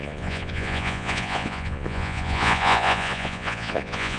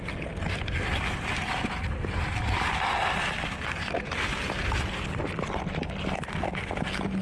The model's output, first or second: first